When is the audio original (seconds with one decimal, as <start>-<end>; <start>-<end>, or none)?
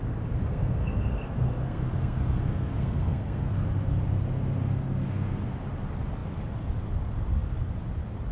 0.0-0.4; 3.5-4.6; 5.4-8.3